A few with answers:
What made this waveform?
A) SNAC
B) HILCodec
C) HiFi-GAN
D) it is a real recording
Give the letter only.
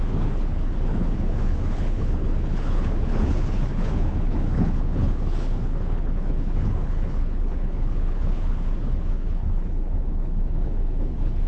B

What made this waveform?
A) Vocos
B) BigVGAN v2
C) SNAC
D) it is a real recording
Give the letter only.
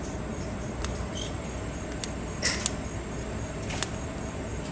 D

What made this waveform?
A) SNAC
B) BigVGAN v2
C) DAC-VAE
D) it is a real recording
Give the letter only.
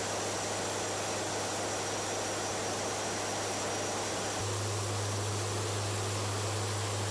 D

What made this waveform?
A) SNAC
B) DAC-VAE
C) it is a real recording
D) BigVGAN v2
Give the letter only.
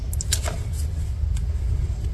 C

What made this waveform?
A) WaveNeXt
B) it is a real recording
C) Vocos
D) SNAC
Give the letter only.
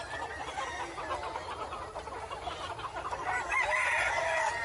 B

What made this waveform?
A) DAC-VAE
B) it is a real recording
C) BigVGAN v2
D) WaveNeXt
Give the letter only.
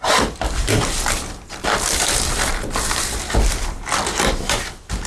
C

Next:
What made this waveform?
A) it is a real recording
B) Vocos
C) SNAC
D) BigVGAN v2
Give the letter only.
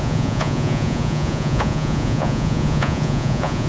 B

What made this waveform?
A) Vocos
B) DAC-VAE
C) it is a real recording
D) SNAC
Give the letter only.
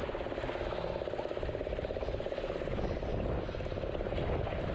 C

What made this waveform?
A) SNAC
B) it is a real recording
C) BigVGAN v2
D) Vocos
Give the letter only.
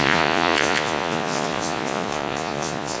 D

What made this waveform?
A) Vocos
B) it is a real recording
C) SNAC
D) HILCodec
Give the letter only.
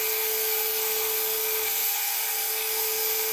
C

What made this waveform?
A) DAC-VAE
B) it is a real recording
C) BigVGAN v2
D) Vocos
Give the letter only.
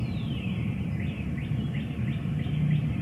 B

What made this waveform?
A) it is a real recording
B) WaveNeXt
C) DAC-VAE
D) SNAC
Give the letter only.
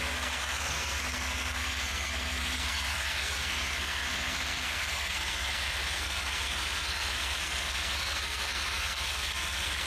D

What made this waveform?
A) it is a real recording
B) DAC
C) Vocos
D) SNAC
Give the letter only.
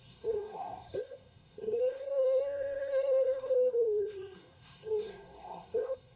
D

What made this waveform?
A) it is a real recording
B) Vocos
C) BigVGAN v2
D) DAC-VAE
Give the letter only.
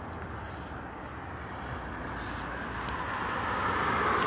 A